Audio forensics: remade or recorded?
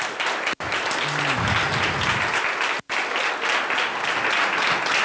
recorded